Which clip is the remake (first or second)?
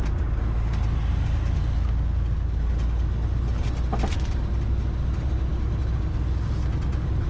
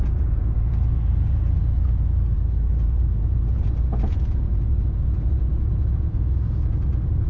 second